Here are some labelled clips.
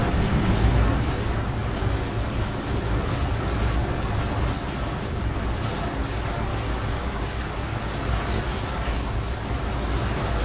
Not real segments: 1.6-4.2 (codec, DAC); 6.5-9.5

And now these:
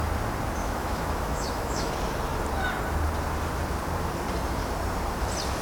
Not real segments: 0.6-1.9 (autoencoder, DAC-VAE)

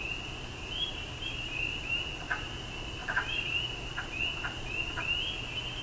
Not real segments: 0.8-2.1 (vocoder, BigVGAN v2); 3.0-3.6